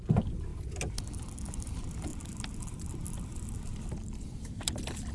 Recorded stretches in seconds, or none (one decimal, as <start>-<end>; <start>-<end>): 0.0-2.1